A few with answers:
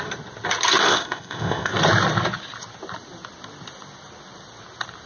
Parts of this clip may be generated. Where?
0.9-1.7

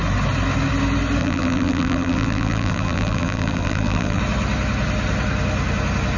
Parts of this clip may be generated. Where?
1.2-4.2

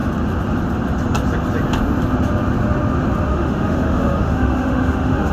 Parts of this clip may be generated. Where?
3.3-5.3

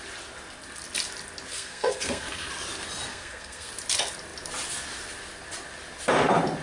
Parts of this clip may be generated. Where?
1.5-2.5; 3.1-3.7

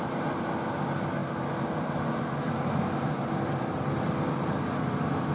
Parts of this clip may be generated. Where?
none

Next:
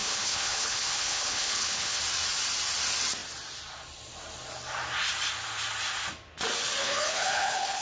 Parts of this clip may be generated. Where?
0.0-2.0; 6.8-7.8